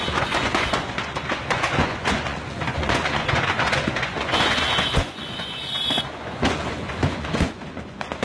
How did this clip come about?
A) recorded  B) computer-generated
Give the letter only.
B